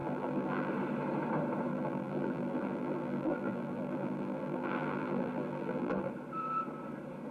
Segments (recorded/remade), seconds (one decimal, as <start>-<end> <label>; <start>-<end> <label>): 0.0-0.7 remade; 0.7-1.7 recorded; 1.7-6.1 remade; 6.1-7.3 recorded

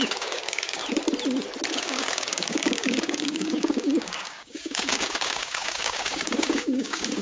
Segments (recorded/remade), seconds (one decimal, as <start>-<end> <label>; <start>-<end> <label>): 0.0-0.8 remade; 0.8-1.7 recorded; 1.7-7.2 remade

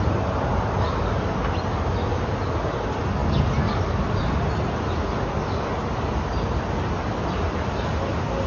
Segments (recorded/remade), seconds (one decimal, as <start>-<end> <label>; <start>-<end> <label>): 0.0-8.5 recorded

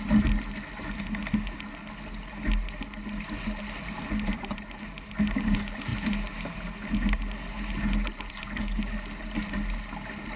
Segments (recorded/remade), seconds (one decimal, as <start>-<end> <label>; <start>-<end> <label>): 0.0-10.4 recorded